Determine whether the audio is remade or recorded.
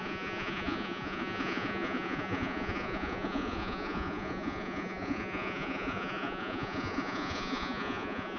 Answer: remade